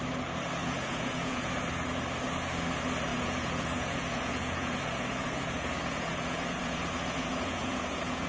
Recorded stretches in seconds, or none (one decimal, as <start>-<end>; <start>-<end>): 0.0-0.6; 1.5-3.1